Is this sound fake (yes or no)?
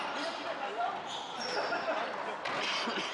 no